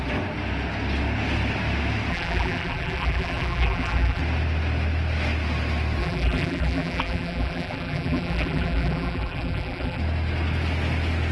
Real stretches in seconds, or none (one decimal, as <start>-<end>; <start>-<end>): 0.0-2.1; 4.2-6.0; 10.0-11.3